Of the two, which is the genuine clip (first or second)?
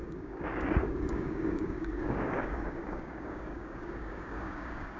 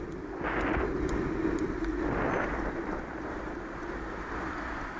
second